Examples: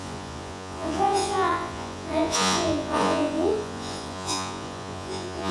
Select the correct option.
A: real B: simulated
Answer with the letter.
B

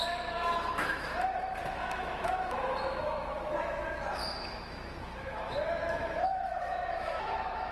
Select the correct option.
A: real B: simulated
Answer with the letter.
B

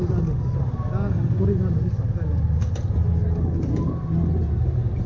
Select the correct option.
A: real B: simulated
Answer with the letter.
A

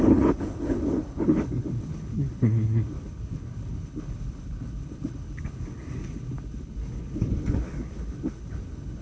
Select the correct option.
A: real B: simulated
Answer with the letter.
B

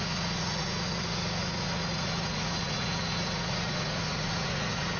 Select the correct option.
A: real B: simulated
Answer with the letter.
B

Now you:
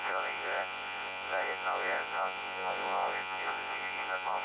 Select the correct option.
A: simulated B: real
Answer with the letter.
A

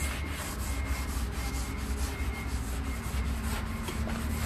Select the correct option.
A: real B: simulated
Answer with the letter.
A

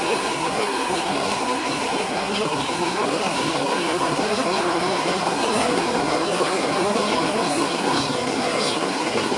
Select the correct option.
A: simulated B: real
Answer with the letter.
A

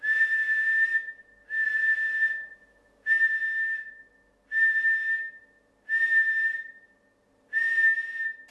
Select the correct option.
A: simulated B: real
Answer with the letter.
B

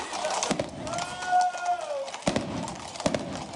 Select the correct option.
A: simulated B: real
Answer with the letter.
B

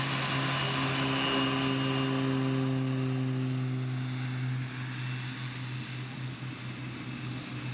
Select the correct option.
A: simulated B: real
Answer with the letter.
B